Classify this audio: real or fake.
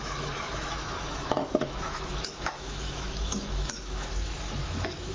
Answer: fake